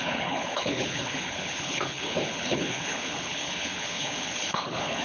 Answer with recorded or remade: remade